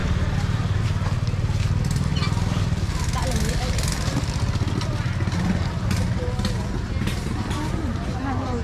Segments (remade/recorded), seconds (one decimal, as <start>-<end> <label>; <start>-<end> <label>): 0.0-8.6 recorded

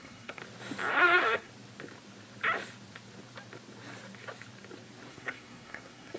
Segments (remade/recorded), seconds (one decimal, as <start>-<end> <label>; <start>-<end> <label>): 0.0-0.4 remade; 0.4-0.9 recorded; 0.9-1.5 remade; 1.5-5.1 recorded; 5.1-6.2 remade

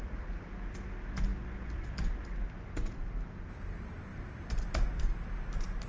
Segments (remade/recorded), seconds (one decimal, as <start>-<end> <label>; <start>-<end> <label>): 0.0-5.9 recorded

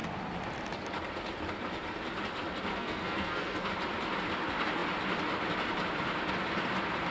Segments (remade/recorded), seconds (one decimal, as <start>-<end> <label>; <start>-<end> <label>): 0.0-2.7 recorded; 2.7-3.7 remade; 3.7-7.1 recorded

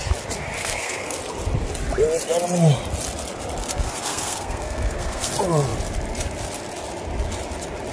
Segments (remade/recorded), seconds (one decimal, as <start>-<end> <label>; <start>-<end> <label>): 0.0-0.6 recorded; 0.6-1.2 remade; 1.2-3.6 recorded; 3.6-5.3 remade; 5.3-7.9 recorded

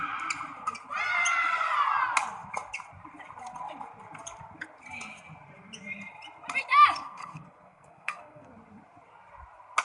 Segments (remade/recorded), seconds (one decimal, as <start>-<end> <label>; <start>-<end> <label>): 0.0-7.0 recorded; 7.0-8.5 remade; 8.5-9.8 recorded